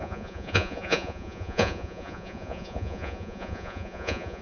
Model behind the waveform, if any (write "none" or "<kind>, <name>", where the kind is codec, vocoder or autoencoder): vocoder, Vocos